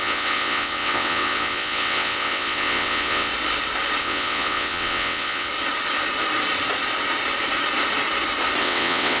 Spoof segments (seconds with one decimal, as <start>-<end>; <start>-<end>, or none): 0.0-3.3; 4.0-5.5; 8.6-9.2